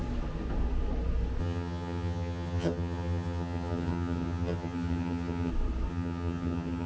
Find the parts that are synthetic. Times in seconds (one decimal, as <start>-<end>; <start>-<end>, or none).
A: 1.4-5.5; 5.9-6.9

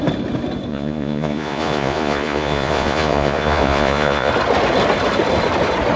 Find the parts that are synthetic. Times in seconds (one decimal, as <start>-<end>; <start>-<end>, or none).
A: 0.7-4.3

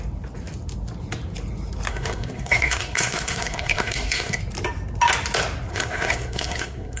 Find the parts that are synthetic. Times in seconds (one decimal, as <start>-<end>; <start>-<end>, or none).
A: 1.9-4.4; 5.7-7.0